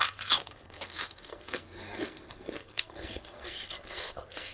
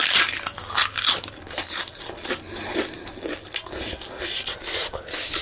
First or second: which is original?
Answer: second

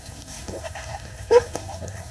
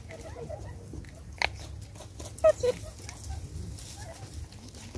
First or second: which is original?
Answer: second